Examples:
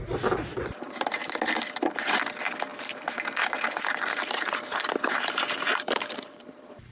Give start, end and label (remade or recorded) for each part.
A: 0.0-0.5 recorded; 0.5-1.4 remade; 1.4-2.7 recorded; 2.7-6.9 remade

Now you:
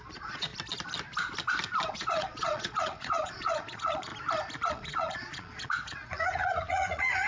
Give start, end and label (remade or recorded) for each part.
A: 0.0-0.5 remade; 0.5-1.9 recorded; 1.9-4.1 remade; 4.1-4.7 recorded; 4.7-7.3 remade

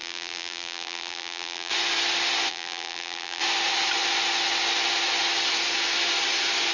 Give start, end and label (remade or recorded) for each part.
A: 0.0-1.7 remade; 1.7-2.5 recorded; 2.5-3.4 remade; 3.4-6.7 recorded